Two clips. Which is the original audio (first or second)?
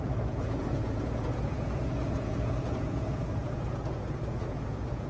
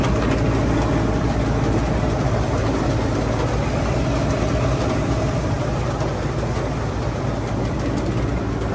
second